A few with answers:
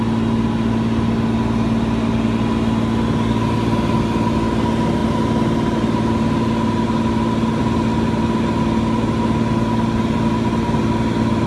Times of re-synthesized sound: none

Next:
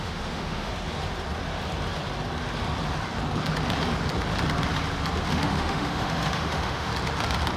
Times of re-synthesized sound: 0.0-0.7; 5.3-6.9

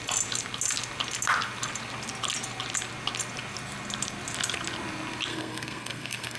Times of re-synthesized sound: 5.3-6.4